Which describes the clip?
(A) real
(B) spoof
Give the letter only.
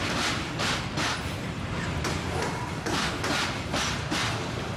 A